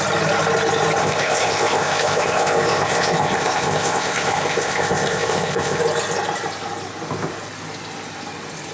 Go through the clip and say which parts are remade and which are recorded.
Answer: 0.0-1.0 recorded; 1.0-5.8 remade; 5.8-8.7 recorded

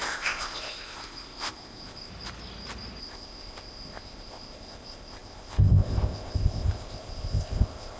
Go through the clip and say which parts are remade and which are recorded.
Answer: 0.0-2.1 remade; 2.1-3.0 recorded; 3.0-8.0 remade

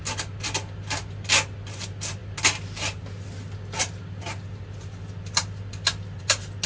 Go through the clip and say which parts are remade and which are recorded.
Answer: 0.0-6.7 recorded

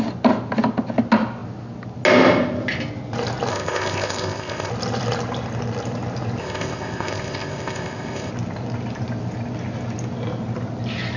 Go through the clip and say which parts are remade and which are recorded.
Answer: 0.0-3.5 recorded; 3.5-4.7 remade; 4.7-6.4 recorded; 6.4-8.3 remade; 8.3-11.2 recorded

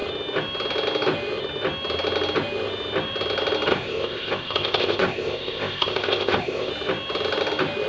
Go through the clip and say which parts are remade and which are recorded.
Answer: 0.0-3.7 recorded; 3.7-6.7 remade; 6.7-7.9 recorded

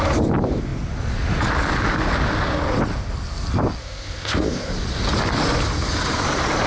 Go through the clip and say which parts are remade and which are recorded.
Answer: 0.0-3.8 recorded; 3.8-4.7 remade; 4.7-6.7 recorded